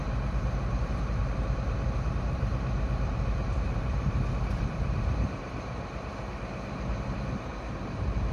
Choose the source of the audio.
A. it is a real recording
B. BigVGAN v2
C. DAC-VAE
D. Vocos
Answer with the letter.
B